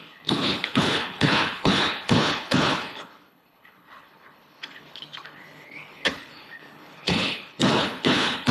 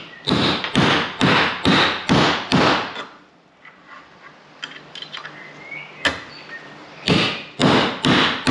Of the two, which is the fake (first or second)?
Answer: first